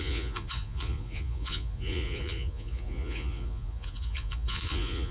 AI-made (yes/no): yes